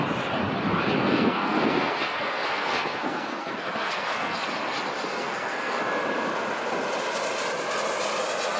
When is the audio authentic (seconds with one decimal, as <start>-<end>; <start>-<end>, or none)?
0.0-1.0; 4.4-5.1; 5.8-8.6